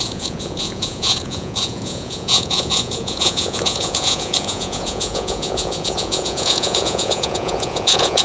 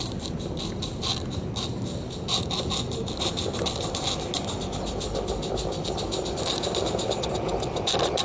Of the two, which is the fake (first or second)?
first